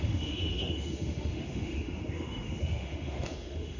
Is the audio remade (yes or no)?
yes